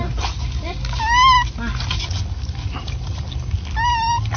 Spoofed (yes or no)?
no